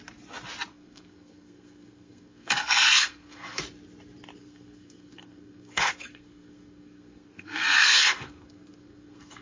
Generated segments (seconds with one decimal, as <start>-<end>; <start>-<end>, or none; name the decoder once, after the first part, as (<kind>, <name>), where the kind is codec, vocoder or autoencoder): 0.7-3.6 (codec, SNAC); 4.4-9.4